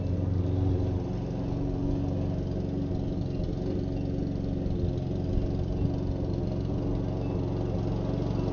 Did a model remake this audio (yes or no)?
no